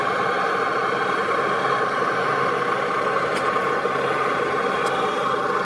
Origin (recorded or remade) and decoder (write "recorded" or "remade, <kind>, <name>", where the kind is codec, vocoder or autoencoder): recorded